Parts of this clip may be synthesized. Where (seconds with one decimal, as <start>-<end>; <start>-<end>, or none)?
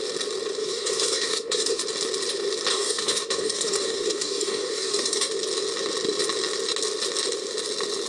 0.6-1.8; 2.7-5.3